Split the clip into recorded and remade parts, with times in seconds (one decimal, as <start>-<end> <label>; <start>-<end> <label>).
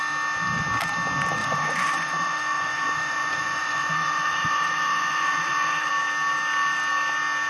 0.0-1.4 recorded; 1.4-5.9 remade; 5.9-7.5 recorded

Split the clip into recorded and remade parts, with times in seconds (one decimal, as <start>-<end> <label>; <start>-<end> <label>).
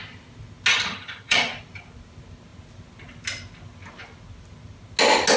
0.0-0.7 recorded; 0.7-1.5 remade; 1.5-5.4 recorded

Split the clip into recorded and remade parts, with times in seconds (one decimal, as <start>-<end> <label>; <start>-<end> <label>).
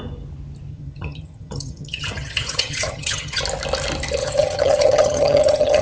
0.0-0.7 recorded; 0.7-3.4 remade; 3.4-4.2 recorded; 4.2-5.8 remade